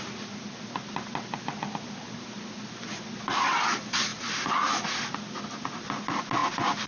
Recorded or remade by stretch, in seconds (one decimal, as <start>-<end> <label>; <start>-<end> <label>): 0.0-6.9 recorded